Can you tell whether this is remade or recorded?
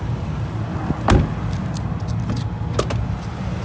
recorded